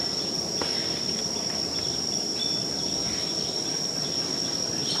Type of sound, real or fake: real